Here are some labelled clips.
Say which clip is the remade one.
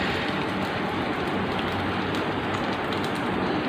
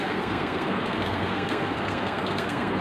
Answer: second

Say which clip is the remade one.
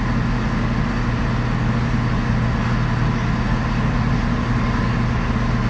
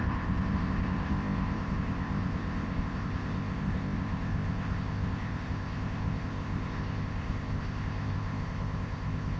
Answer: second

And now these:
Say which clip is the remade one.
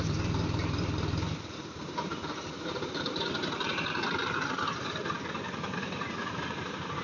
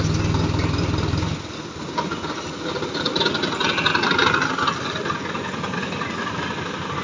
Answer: first